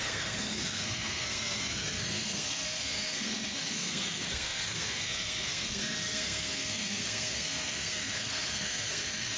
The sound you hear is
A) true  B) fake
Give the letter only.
B